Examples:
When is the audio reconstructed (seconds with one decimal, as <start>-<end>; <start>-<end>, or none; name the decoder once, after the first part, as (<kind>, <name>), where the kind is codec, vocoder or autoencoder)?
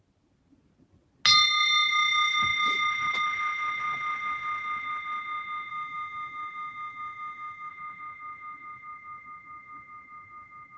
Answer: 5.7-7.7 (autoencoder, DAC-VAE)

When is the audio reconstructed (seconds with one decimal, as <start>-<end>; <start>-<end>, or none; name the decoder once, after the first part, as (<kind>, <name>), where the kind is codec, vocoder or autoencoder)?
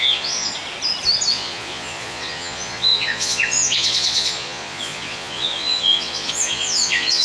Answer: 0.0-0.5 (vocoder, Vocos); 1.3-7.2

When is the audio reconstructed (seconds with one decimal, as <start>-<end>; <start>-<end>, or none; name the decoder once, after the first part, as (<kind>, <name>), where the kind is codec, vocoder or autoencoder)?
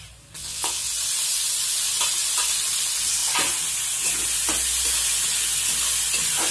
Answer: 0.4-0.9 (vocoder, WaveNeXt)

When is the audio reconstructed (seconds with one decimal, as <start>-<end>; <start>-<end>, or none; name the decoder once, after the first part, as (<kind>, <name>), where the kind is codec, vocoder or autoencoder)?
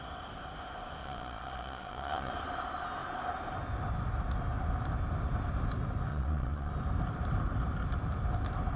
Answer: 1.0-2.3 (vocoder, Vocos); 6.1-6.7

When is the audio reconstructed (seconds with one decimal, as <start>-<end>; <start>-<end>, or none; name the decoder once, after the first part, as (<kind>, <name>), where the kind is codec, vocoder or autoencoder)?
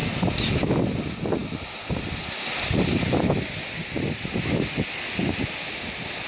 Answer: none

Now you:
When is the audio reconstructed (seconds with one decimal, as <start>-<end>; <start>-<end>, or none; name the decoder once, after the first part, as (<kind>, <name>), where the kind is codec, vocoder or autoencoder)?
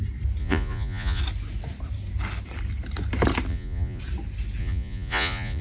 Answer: 0.4-1.2 (vocoder, Vocos); 3.5-4.0; 4.6-5.6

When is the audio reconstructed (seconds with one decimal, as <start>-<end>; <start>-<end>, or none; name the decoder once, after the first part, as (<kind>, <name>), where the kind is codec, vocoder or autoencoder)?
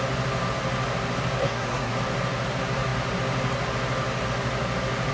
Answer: 1.4-1.9 (codec, SNAC)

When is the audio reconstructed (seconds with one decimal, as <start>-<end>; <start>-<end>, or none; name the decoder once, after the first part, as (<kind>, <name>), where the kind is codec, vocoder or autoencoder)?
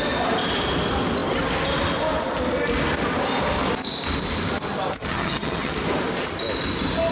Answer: 5.0-5.7 (vocoder, HiFi-GAN)